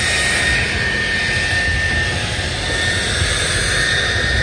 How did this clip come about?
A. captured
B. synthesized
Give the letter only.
A